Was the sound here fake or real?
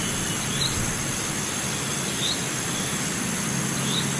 real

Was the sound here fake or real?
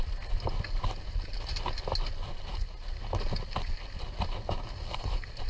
real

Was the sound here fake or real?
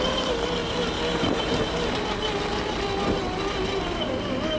real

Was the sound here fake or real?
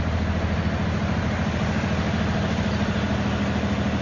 real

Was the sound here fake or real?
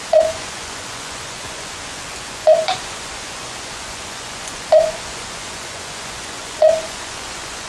fake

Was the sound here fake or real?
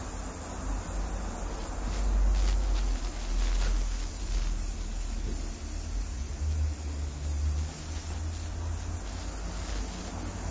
real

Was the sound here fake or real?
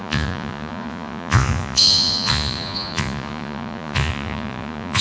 fake